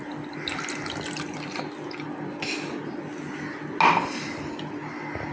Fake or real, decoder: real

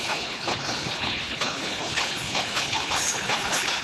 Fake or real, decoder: fake, codec, HILCodec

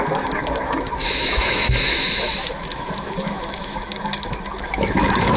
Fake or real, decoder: fake, autoencoder, DAC-VAE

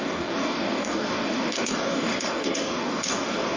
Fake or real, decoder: fake, codec, DAC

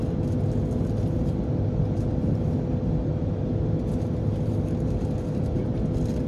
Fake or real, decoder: real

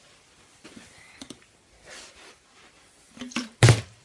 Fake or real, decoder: fake, vocoder, BigVGAN v2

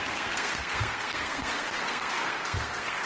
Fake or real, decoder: fake, codec, SNAC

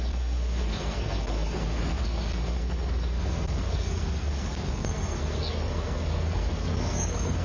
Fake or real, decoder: fake, codec, SNAC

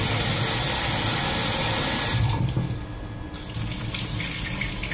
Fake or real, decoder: real